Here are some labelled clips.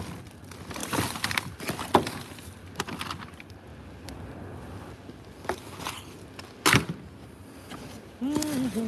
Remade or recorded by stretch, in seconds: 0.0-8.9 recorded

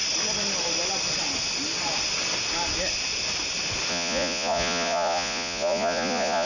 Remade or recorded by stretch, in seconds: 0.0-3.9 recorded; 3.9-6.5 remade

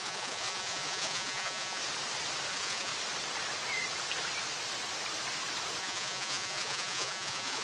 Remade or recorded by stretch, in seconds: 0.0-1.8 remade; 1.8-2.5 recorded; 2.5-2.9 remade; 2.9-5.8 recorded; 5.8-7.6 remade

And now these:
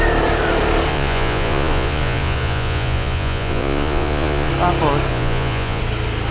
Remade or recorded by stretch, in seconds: 0.0-0.9 recorded; 0.9-4.5 remade; 4.5-5.1 recorded; 5.1-5.8 remade; 5.8-6.3 recorded